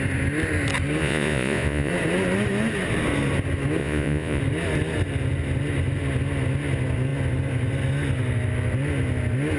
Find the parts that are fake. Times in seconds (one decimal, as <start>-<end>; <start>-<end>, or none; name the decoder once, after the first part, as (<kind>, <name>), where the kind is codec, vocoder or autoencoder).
1.0-1.9 (vocoder, Vocos); 3.8-4.4

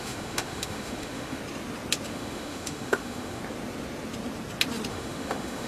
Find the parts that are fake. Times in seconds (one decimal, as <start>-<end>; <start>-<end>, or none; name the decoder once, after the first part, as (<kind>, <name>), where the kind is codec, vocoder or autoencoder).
0.0-1.4 (autoencoder, DAC-VAE); 2.1-3.4; 4.9-5.7

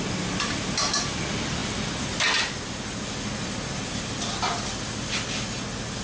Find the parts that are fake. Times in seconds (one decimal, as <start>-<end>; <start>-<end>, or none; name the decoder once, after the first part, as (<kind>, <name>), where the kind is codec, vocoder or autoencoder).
none

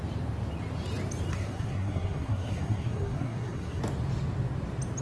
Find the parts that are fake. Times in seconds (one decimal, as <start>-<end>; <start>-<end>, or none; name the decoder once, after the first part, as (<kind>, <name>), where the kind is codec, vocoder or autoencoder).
1.3-3.8 (codec, SNAC)